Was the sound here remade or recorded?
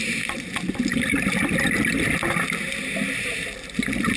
recorded